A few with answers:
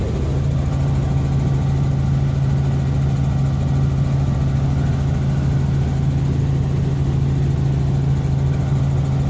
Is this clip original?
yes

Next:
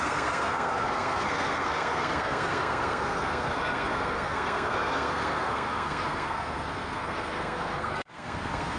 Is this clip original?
no